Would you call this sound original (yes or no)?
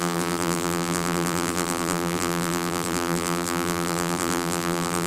no